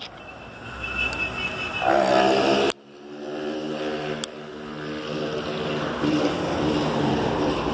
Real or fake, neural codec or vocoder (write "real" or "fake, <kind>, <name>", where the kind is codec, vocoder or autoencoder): real